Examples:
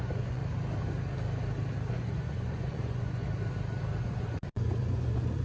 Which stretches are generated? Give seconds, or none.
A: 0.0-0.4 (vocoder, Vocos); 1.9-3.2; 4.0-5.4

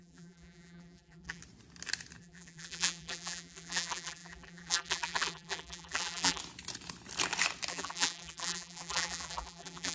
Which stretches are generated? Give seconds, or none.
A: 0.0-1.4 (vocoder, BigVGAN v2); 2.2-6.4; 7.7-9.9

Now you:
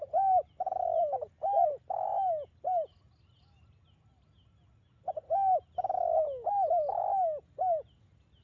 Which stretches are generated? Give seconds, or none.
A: none

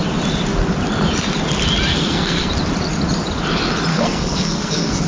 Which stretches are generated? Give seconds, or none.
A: 1.9-2.5 (codec, SNAC); 3.9-5.1